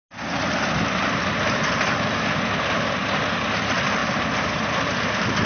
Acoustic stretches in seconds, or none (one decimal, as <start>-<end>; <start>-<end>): 0.0-5.5